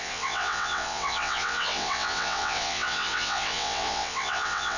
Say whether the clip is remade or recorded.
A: remade